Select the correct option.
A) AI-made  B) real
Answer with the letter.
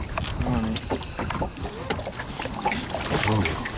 B